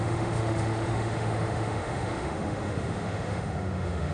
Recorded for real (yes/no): no